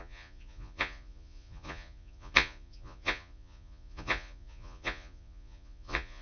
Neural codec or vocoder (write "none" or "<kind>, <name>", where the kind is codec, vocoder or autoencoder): vocoder, Vocos